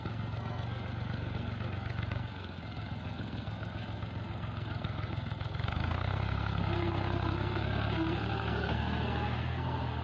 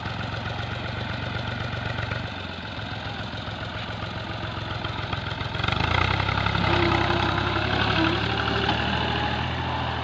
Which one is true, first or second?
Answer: second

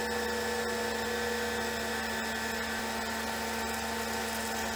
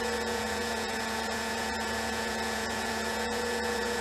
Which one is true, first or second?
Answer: first